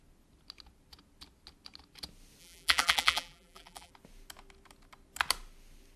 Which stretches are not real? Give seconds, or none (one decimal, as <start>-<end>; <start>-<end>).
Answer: 2.4-3.9